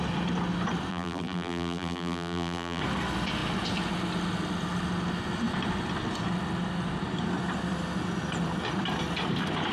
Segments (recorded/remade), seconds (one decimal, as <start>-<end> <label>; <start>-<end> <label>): 0.0-0.9 recorded; 0.9-2.8 remade; 2.8-9.7 recorded